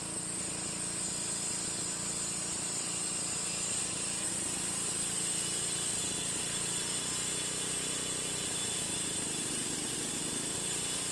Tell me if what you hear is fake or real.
real